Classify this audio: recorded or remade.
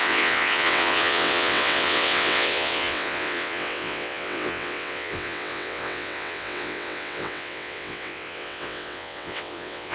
remade